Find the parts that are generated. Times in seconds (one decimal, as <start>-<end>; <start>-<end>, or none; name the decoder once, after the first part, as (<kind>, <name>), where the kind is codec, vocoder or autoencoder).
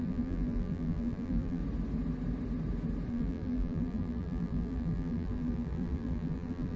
0.0-1.6 (vocoder, BigVGAN v2); 3.1-6.8